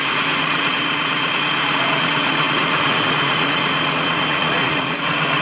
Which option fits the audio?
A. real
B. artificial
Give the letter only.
B